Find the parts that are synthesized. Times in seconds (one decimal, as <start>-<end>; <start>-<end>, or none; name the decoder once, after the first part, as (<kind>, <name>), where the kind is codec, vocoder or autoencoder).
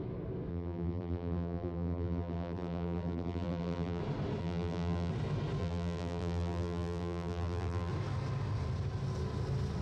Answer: 0.5-4.0 (vocoder, BigVGAN v2); 4.4-5.1; 5.6-7.9